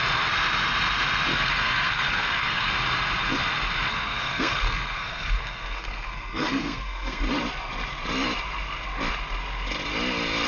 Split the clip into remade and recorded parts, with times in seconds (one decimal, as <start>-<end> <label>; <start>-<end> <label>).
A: 0.0-1.3 recorded; 1.3-2.7 remade; 2.7-3.9 recorded; 3.9-7.2 remade; 7.2-10.5 recorded